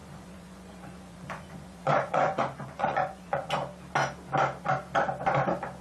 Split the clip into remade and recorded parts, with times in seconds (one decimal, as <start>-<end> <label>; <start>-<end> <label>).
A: 0.0-3.5 remade; 3.5-5.8 recorded